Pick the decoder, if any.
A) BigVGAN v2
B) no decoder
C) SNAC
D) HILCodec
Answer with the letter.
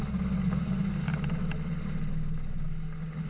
B